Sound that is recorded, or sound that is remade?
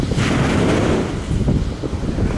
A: recorded